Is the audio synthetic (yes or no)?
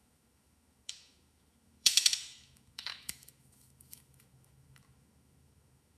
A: yes